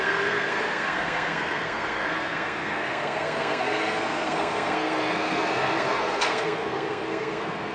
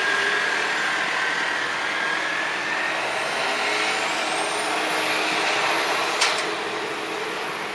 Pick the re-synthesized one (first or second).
first